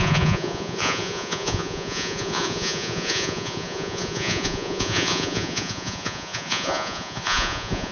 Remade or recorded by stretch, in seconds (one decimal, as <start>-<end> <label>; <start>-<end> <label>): 0.0-7.9 remade